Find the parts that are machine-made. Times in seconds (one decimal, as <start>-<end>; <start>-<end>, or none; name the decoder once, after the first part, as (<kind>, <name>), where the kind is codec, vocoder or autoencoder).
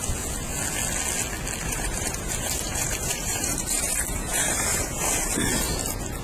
1.6-5.3 (vocoder, BigVGAN v2)